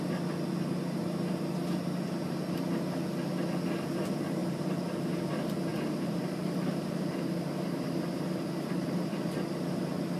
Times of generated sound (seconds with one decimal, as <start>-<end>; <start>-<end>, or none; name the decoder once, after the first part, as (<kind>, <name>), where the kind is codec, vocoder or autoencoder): 4.4-5.2 (vocoder, BigVGAN v2); 5.7-9.3